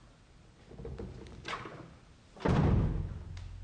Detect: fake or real real